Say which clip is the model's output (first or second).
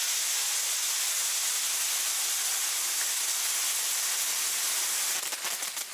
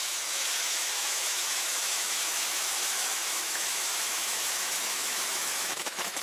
second